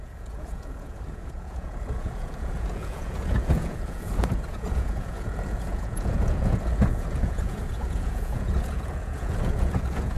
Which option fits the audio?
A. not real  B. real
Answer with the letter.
A